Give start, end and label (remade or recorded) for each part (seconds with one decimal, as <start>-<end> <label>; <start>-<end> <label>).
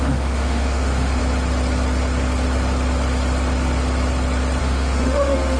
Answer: 0.0-1.2 remade; 1.2-4.6 recorded; 4.6-5.6 remade